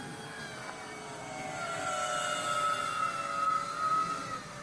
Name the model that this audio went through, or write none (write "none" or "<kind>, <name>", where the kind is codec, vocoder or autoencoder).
none